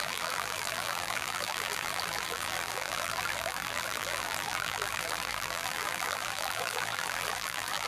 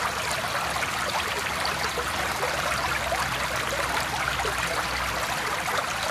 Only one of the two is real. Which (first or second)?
second